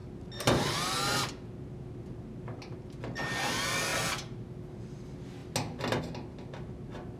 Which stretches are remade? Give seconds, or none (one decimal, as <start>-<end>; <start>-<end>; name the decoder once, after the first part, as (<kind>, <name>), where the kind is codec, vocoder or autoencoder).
none